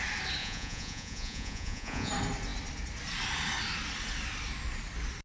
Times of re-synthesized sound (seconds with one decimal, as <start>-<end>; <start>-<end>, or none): 0.4-2.1